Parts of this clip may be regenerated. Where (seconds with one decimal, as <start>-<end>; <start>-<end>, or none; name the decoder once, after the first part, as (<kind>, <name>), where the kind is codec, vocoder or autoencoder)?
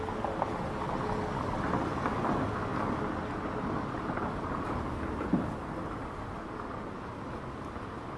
none